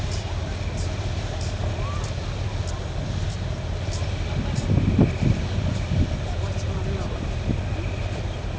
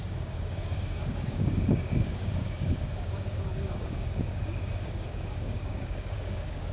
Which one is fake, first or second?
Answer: second